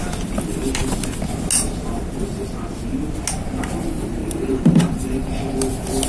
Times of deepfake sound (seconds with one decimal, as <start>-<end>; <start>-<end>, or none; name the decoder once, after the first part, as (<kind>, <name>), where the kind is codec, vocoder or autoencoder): 4.2-5.4 (vocoder, BigVGAN v2)